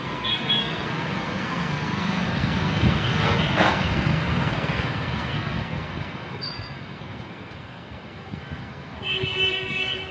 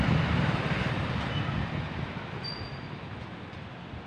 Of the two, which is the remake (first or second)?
first